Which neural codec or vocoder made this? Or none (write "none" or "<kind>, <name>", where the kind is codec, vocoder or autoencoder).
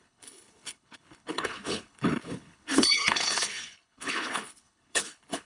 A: codec, HILCodec